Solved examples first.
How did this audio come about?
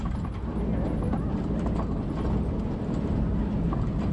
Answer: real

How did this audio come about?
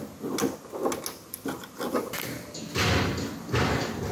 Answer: real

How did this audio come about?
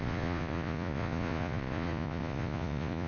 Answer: fake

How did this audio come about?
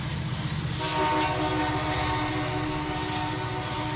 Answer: real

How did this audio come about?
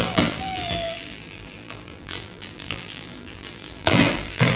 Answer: fake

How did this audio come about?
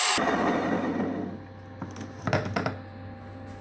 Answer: real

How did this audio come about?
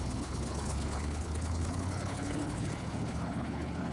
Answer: fake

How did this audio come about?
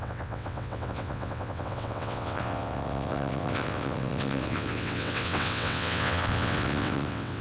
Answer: fake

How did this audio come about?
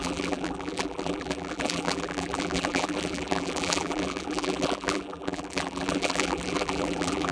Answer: fake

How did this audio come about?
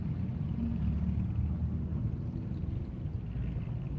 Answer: real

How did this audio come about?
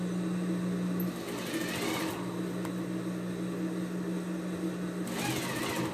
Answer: real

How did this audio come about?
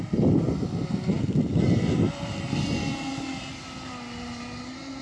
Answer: real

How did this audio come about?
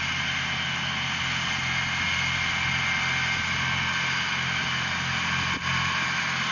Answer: real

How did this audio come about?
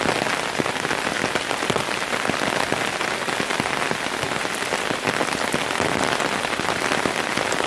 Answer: real